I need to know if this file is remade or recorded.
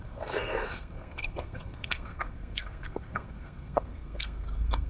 remade